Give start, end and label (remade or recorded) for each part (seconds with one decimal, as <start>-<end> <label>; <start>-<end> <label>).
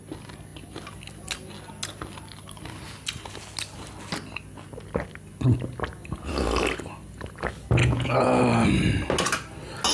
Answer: 0.0-7.8 recorded; 7.8-8.4 remade; 8.4-9.9 recorded